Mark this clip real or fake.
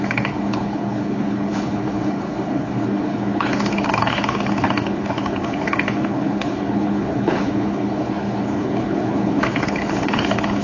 fake